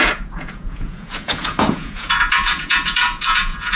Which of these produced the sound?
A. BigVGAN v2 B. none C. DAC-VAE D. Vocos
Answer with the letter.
D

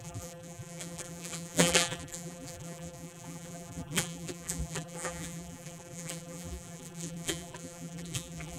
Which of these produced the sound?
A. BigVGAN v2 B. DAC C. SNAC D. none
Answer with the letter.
A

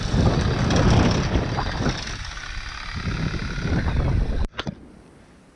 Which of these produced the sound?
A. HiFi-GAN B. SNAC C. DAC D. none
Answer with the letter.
D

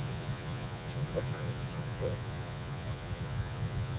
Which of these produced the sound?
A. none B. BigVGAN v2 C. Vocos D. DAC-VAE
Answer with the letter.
C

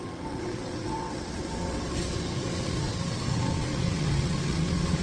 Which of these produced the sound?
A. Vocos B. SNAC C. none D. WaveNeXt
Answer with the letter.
D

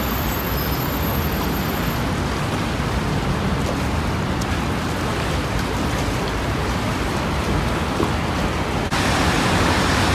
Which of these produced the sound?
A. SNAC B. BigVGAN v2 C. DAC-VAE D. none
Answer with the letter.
D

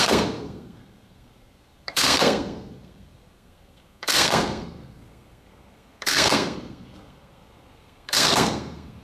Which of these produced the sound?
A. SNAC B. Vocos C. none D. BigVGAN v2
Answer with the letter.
A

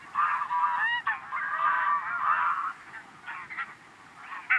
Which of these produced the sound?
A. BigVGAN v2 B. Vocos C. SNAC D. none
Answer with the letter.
D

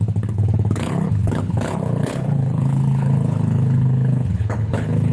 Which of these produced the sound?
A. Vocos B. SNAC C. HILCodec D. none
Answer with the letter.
C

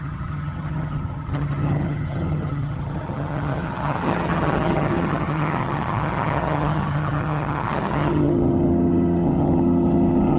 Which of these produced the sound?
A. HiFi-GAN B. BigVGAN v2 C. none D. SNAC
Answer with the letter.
A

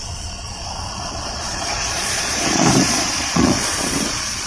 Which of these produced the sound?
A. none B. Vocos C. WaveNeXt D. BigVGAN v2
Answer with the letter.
B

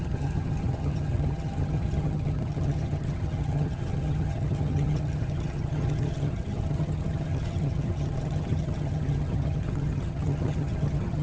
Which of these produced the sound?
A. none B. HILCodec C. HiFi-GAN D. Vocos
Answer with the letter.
C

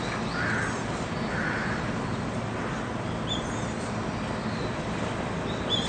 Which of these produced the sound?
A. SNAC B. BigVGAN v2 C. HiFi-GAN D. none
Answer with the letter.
D